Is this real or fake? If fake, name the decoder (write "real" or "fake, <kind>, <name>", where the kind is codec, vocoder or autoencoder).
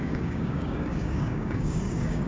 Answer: fake, codec, DAC